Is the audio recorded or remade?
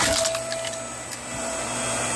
recorded